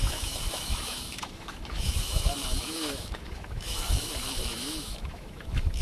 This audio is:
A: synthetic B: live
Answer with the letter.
A